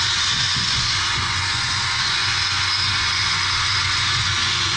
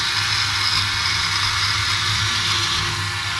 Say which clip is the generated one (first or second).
first